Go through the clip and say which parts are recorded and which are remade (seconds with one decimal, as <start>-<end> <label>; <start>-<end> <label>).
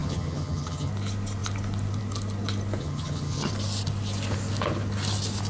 0.0-0.9 remade; 0.9-2.8 recorded; 2.8-3.5 remade; 3.5-5.5 recorded